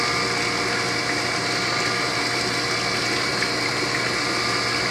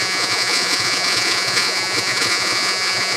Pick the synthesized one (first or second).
second